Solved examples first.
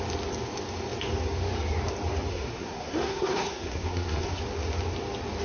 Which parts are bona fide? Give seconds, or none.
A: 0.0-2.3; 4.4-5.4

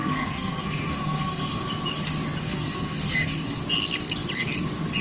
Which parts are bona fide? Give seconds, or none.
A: 1.6-2.4; 3.6-5.0

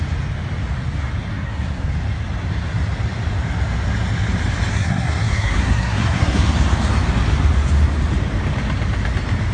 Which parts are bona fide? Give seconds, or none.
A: 0.0-1.3; 1.9-4.7; 6.5-9.5

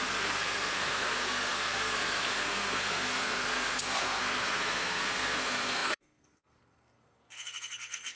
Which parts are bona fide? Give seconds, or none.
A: none

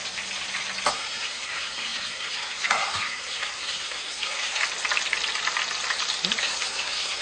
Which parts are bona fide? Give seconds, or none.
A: 0.0-0.9; 4.6-6.4